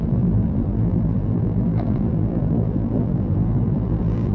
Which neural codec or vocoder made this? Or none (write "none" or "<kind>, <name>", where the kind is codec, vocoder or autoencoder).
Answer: vocoder, BigVGAN v2